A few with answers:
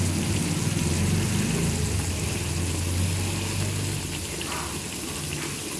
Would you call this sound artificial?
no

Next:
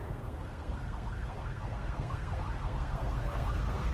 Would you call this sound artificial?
yes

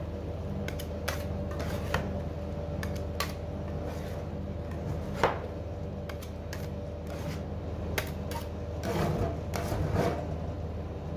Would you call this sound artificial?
no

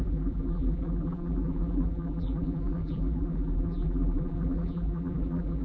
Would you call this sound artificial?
yes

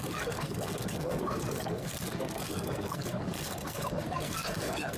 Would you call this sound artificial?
yes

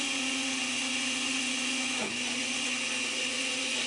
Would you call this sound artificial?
yes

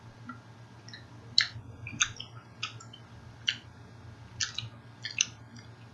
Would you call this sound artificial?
no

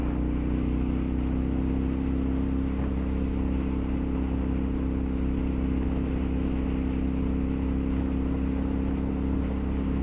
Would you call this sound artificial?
no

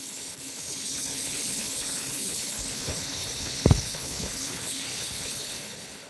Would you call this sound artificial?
yes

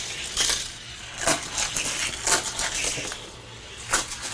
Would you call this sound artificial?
no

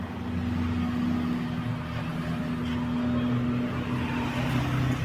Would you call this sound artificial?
no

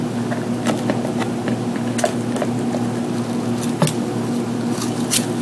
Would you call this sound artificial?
no